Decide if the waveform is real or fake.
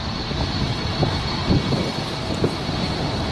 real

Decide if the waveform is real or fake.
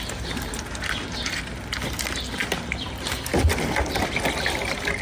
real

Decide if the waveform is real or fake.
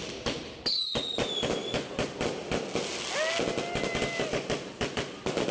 real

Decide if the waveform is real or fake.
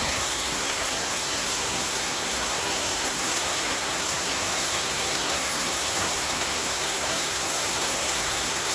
fake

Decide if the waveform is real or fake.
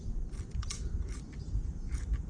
fake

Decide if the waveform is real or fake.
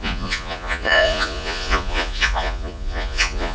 fake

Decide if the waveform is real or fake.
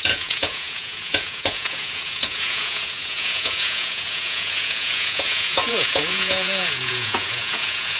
fake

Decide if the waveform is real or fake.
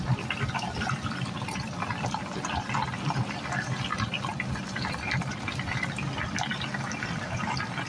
real